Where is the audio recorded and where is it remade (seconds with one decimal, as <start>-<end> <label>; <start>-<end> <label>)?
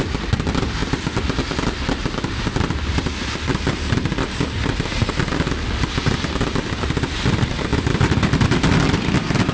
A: 0.0-0.8 recorded; 0.8-4.1 remade; 4.1-7.7 recorded; 7.7-9.1 remade; 9.1-9.5 recorded